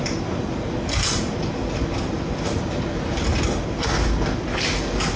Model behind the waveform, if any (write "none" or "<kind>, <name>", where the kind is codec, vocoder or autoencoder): none